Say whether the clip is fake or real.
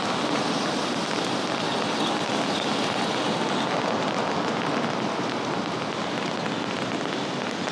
real